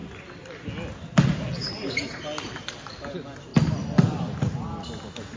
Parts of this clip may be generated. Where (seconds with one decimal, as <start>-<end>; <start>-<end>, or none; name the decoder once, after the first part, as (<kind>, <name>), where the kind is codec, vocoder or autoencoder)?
0.0-0.6 (vocoder, BigVGAN v2); 3.5-4.5